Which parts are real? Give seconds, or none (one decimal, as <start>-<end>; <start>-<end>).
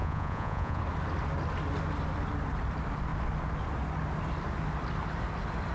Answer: 0.8-5.7